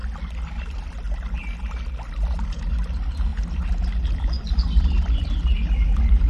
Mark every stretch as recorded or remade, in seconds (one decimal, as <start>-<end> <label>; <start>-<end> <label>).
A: 0.0-6.3 recorded

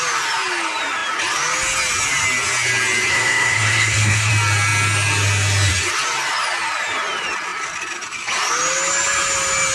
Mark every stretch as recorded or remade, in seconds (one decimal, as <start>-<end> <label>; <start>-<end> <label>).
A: 0.0-3.1 recorded; 3.1-4.3 remade; 4.3-9.7 recorded

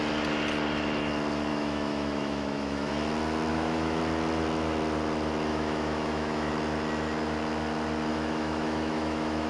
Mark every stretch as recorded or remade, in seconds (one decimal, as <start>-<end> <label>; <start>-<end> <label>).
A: 0.0-1.5 recorded; 1.5-2.9 remade; 2.9-3.5 recorded; 3.5-4.0 remade; 4.0-5.5 recorded; 5.5-6.5 remade; 6.5-8.1 recorded; 8.1-9.5 remade

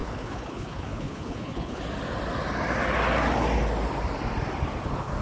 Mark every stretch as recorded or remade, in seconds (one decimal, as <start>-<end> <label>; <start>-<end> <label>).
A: 0.0-1.8 remade; 1.8-5.2 recorded

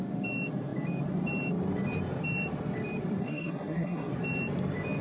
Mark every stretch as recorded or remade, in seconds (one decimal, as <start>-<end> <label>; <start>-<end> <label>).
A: 0.0-3.2 recorded; 3.2-4.1 remade; 4.1-5.0 recorded

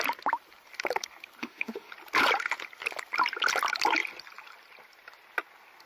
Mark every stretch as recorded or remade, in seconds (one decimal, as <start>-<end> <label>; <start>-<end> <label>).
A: 0.0-1.4 recorded; 1.4-1.9 remade; 1.9-5.9 recorded

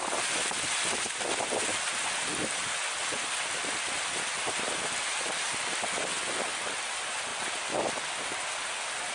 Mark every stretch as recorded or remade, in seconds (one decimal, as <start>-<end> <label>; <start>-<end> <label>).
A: 0.0-7.3 recorded; 7.3-8.4 remade; 8.4-9.1 recorded